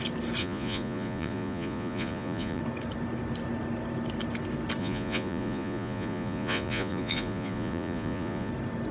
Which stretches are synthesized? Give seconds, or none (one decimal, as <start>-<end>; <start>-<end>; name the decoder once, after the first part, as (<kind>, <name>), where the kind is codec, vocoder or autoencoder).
0.4-2.6 (vocoder, Vocos); 4.8-8.5